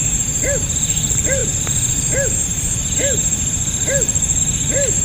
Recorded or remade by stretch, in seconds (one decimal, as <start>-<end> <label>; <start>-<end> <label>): 0.0-5.0 recorded

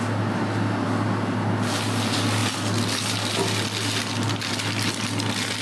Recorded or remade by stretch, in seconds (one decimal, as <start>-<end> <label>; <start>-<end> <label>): 0.0-5.6 recorded